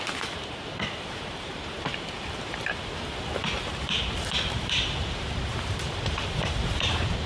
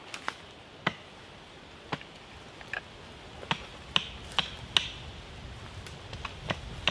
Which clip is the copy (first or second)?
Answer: first